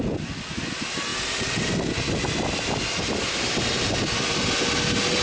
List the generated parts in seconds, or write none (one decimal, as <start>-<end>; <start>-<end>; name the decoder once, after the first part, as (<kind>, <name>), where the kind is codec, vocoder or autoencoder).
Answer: none